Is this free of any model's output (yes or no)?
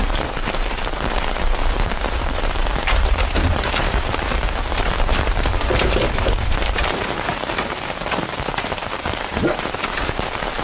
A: no